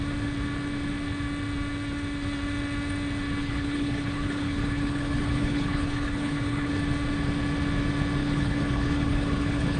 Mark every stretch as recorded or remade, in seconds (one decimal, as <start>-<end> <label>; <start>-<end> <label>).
0.0-3.4 recorded; 3.4-6.7 remade; 6.7-8.2 recorded; 8.2-9.8 remade